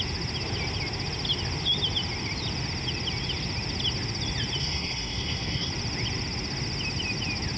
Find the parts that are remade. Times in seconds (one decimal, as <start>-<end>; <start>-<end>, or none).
4.6-5.7